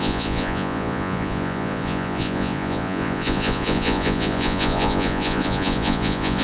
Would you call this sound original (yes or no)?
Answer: no